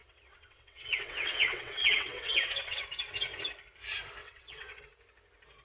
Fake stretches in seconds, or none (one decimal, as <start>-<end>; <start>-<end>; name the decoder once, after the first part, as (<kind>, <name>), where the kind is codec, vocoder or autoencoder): 0.0-2.8 (vocoder, WaveNeXt); 4.2-4.8